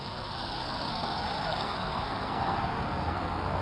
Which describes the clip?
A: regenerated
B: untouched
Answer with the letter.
A